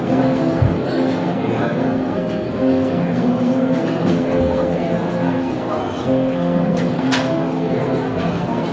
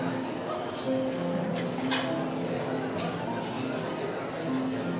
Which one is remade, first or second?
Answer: first